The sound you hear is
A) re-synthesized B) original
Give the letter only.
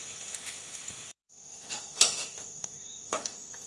A